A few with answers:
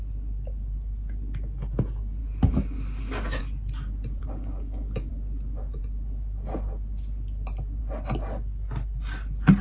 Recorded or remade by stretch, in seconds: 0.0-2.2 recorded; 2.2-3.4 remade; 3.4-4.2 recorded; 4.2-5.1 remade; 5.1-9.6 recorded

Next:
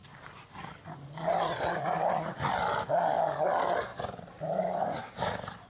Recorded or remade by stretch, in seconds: 0.0-2.1 remade; 2.1-5.0 recorded; 5.0-5.7 remade

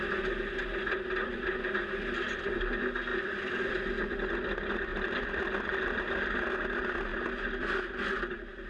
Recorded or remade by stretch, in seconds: 0.0-3.1 recorded; 3.1-3.7 remade; 3.7-4.9 recorded; 4.9-6.0 remade; 6.0-7.1 recorded; 7.1-7.8 remade; 7.8-8.7 recorded